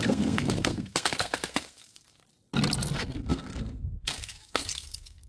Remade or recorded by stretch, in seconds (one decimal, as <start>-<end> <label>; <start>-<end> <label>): 0.0-2.2 remade; 2.2-2.9 recorded; 2.9-5.3 remade